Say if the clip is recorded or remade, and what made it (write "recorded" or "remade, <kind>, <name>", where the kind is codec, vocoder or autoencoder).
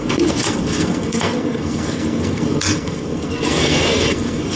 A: remade, codec, SNAC